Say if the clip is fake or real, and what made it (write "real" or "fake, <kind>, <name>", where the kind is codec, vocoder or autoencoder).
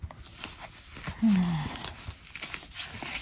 real